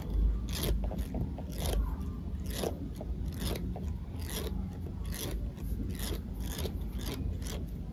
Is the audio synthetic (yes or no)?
no